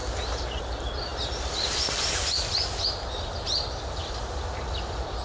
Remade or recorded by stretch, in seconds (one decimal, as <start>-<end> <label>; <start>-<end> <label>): 0.0-5.2 recorded